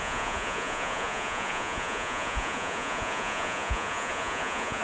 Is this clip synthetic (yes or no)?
yes